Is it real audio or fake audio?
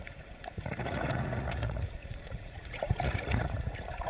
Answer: fake